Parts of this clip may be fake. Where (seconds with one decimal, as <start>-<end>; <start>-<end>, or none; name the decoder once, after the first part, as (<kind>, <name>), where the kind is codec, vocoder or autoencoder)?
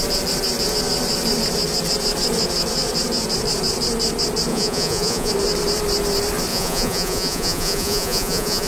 4.5-5.3 (vocoder, Vocos); 6.5-8.7